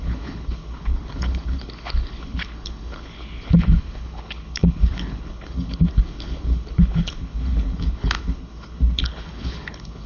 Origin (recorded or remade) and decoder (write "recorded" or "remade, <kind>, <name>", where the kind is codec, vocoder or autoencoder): remade, codec, HILCodec